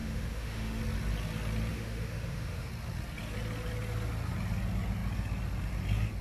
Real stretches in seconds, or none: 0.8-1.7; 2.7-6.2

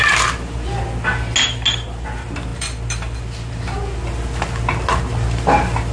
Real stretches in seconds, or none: 0.0-5.9